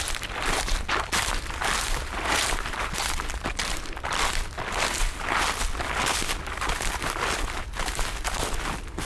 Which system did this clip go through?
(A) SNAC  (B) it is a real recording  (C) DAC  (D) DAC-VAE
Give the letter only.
B